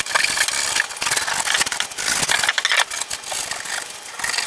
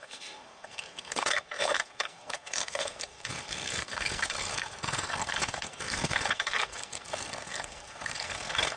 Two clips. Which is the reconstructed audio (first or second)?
second